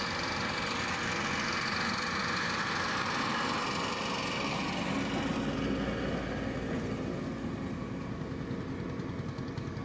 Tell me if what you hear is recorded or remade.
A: recorded